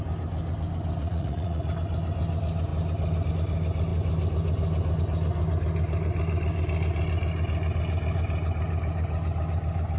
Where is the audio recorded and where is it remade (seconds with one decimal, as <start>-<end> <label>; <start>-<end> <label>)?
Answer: 0.0-1.0 recorded; 1.0-1.7 remade; 1.7-10.0 recorded